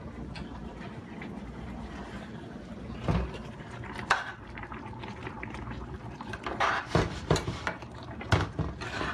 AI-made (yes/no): yes